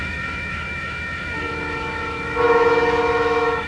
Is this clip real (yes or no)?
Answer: no